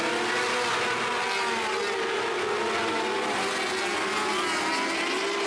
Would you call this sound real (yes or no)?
yes